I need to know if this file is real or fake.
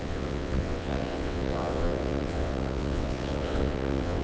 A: fake